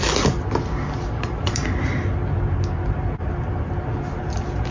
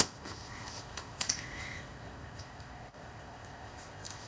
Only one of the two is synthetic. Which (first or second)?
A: second